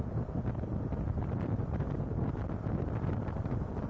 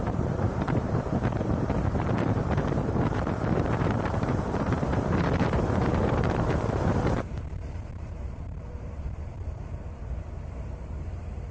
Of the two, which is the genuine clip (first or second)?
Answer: first